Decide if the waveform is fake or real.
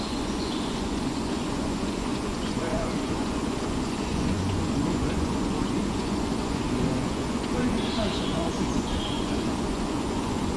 fake